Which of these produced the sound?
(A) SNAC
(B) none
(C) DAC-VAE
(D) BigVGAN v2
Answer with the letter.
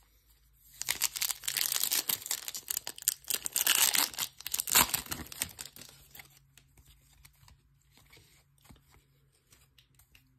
B